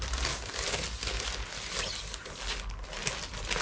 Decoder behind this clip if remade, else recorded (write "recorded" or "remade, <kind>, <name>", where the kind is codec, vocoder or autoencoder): recorded